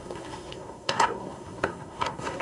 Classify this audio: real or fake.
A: fake